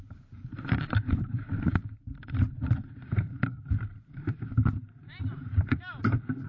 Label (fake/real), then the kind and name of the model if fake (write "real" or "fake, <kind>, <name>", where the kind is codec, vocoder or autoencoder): fake, vocoder, BigVGAN v2